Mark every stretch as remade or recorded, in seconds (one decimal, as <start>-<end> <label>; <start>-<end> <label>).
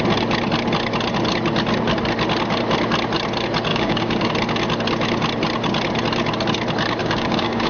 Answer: 0.0-3.7 recorded; 3.7-4.3 remade; 4.3-7.0 recorded; 7.0-7.7 remade